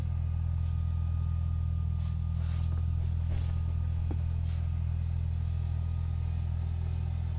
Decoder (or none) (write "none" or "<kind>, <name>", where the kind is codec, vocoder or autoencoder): none